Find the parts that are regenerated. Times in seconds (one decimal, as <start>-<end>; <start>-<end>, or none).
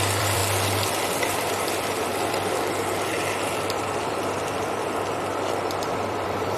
0.0-0.4; 1.2-2.1; 5.7-6.6